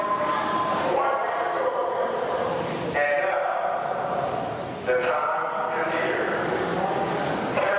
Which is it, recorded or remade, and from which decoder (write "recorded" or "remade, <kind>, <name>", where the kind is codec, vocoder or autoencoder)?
recorded